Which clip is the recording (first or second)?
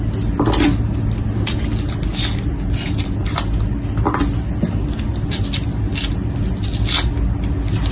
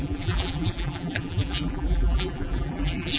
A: first